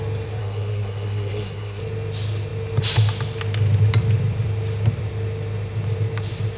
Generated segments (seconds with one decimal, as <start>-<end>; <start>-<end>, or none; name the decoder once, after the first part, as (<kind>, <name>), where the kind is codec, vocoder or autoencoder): 0.4-1.8 (codec, SNAC)